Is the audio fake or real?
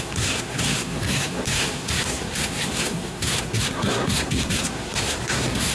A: fake